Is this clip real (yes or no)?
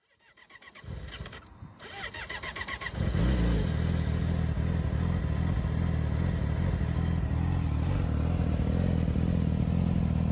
yes